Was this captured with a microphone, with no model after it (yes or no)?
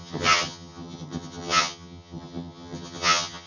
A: no